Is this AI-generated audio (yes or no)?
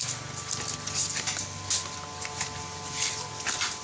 no